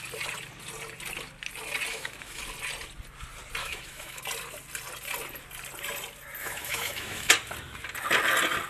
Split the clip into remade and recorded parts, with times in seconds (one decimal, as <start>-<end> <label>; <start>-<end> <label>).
0.0-1.9 recorded; 1.9-2.4 remade; 2.4-3.6 recorded; 3.6-4.2 remade; 4.2-6.4 recorded; 6.4-7.3 remade; 7.3-8.7 recorded